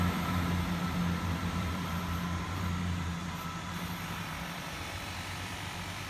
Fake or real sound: fake